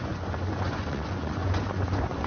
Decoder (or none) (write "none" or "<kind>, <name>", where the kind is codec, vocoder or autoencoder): vocoder, Vocos